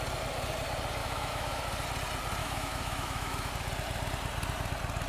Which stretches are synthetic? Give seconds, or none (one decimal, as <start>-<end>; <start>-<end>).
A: 1.0-1.6; 2.4-3.5